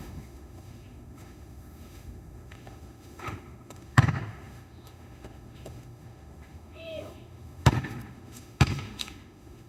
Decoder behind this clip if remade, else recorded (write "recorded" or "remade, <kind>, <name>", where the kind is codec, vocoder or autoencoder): remade, autoencoder, DAC-VAE